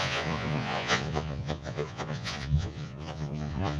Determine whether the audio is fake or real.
fake